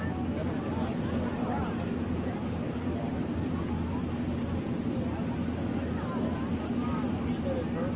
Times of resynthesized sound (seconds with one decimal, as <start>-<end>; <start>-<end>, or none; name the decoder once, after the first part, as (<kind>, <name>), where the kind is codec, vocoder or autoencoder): 0.4-3.6 (vocoder, BigVGAN v2)